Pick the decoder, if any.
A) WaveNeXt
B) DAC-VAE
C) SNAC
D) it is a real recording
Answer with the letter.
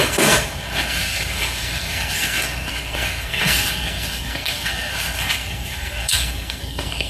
C